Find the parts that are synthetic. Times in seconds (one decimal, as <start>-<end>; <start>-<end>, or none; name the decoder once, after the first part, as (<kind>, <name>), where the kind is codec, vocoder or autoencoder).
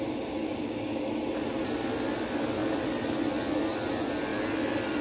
0.4-1.0 (codec, DAC)